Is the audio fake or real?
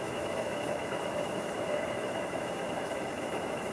fake